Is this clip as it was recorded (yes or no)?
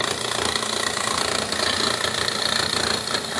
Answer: yes